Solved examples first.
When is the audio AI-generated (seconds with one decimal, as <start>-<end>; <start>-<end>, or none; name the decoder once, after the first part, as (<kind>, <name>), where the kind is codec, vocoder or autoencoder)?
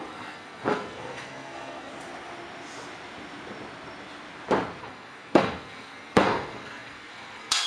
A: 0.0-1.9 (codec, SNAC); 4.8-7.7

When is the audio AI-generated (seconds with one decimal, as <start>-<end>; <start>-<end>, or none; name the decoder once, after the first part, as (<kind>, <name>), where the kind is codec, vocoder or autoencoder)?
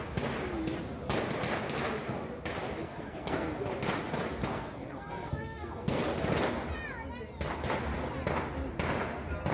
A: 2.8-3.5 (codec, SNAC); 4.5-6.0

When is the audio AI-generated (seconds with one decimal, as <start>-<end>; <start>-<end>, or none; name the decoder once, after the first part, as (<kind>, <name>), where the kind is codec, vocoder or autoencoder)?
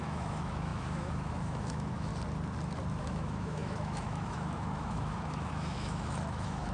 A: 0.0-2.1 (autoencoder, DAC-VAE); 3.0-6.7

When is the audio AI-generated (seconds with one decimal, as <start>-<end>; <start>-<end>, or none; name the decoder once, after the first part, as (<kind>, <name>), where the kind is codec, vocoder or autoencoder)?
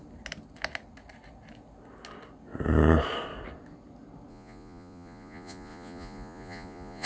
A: 4.3-7.1 (vocoder, Vocos)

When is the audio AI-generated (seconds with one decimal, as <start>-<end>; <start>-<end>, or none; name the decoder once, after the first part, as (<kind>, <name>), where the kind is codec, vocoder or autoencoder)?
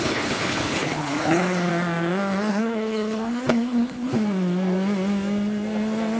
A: 0.0-1.7 (codec, HILCodec); 2.5-4.1